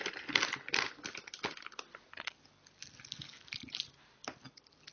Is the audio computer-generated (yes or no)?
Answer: no